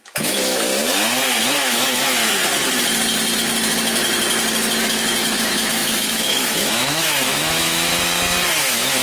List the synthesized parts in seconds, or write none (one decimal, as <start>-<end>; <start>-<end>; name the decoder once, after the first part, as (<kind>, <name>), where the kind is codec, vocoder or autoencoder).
0.0-0.7 (autoencoder, DAC-VAE); 1.5-2.2; 4.8-7.9; 8.6-9.0